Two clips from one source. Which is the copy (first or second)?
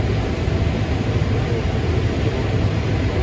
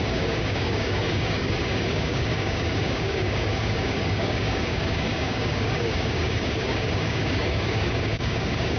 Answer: second